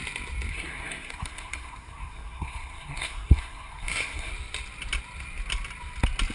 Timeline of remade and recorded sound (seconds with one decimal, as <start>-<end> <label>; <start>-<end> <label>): 0.0-0.5 recorded; 0.5-4.3 remade; 4.3-6.3 recorded